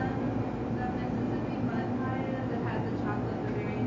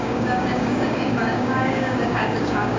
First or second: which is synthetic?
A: second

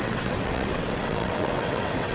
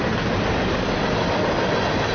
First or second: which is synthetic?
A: first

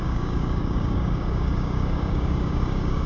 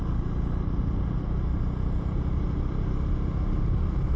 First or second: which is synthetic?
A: first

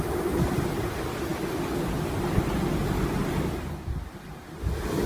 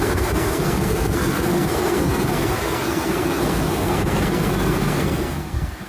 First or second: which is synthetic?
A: second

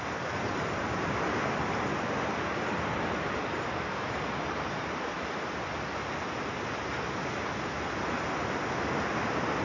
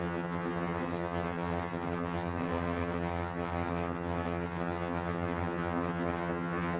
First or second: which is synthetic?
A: second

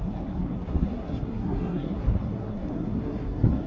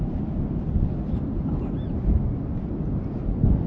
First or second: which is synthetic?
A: first